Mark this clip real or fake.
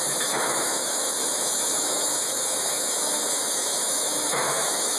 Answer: fake